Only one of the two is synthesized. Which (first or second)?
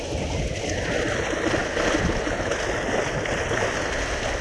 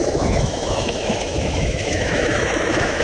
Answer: second